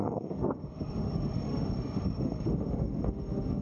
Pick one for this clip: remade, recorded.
remade